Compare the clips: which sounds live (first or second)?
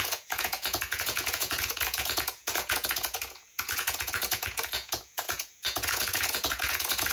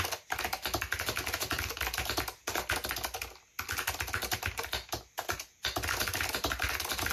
second